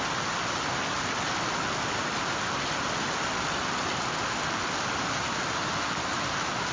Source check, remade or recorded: recorded